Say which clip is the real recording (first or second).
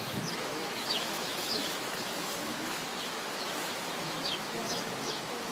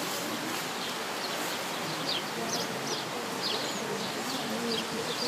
second